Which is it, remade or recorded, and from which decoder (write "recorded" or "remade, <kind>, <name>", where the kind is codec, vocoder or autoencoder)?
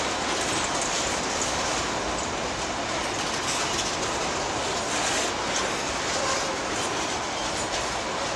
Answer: recorded